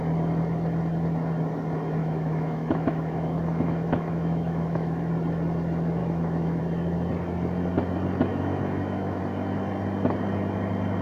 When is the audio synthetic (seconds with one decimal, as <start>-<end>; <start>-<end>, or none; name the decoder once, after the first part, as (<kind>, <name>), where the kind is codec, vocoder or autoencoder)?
2.0-5.1 (autoencoder, DAC-VAE); 6.0-6.6; 8.3-9.2